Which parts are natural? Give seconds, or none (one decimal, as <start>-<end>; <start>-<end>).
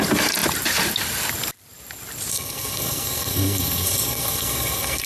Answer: 0.0-2.3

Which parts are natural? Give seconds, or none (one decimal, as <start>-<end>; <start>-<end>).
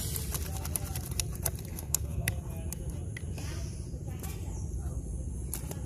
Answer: 0.0-1.7; 2.3-5.9